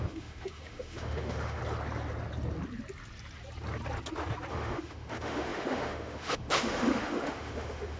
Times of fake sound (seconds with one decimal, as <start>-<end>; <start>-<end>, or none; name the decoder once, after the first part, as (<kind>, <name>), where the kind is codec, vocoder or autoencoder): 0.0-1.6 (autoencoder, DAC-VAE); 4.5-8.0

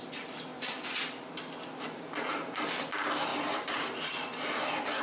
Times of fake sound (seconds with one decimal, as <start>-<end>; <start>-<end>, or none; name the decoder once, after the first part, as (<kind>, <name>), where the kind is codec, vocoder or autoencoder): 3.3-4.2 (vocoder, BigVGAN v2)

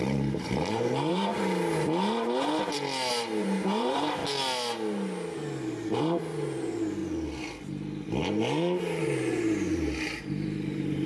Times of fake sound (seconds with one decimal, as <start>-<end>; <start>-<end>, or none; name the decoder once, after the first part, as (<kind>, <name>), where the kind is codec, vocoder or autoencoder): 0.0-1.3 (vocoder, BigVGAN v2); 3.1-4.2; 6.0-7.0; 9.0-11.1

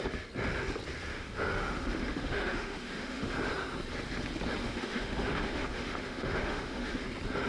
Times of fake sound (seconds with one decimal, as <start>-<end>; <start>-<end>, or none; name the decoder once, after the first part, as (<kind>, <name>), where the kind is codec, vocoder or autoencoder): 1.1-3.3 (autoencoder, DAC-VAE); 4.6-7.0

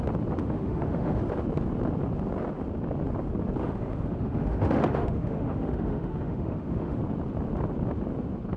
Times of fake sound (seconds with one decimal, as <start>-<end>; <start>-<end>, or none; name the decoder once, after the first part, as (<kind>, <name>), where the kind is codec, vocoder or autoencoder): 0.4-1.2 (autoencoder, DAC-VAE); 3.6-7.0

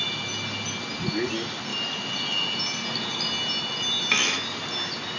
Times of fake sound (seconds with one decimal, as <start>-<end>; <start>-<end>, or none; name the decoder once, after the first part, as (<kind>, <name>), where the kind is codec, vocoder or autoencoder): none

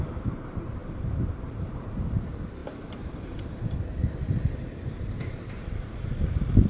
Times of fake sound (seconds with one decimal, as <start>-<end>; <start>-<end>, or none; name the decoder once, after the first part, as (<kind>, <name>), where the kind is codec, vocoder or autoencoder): 0.0-6.7 (vocoder, BigVGAN v2)

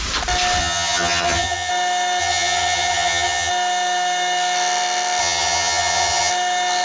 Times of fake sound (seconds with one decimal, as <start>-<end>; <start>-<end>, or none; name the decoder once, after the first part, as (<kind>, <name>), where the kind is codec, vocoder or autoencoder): 0.6-1.7 (vocoder, HiFi-GAN); 2.2-3.5; 5.2-6.3